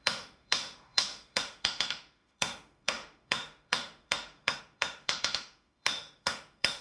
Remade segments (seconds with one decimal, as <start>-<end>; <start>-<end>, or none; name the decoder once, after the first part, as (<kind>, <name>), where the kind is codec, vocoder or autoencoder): 0.0-6.8 (autoencoder, DAC-VAE)